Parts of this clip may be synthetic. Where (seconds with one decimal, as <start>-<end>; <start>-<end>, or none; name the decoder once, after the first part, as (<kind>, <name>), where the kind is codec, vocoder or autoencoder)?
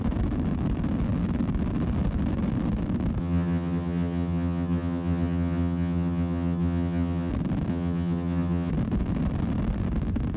3.2-7.3 (vocoder, HiFi-GAN); 7.7-8.7